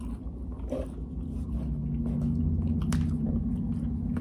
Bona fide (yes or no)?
yes